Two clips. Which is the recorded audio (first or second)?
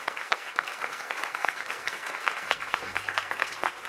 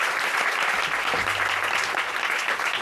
second